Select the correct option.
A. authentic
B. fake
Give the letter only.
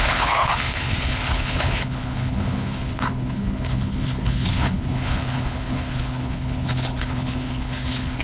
B